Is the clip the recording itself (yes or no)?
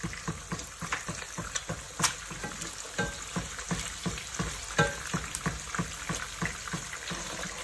yes